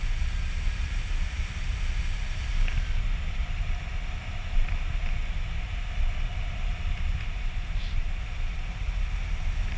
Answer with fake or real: real